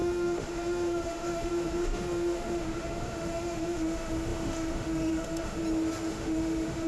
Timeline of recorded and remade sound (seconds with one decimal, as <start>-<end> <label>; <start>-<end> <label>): 0.0-5.6 remade; 5.6-6.1 recorded; 6.1-6.9 remade